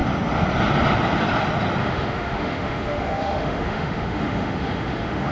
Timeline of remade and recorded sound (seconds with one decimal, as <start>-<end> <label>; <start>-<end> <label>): 0.0-1.8 recorded; 1.8-5.3 remade